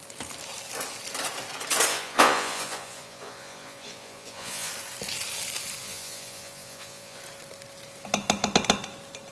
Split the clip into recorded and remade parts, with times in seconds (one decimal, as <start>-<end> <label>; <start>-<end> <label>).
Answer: 0.0-1.9 recorded; 1.9-4.7 remade; 4.7-5.8 recorded; 5.8-7.2 remade; 7.2-9.3 recorded